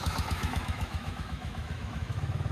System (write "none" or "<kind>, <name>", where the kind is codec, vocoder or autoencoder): autoencoder, DAC-VAE